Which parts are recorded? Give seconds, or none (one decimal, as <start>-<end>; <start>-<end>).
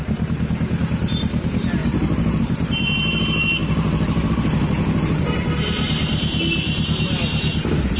0.0-1.8; 2.4-3.6; 4.3-8.0